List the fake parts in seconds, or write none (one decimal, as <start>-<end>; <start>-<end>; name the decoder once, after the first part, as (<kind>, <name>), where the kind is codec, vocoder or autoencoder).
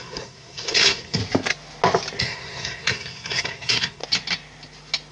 0.0-1.2 (codec, SNAC); 2.2-4.0